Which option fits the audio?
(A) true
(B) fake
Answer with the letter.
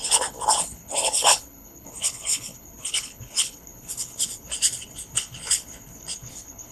B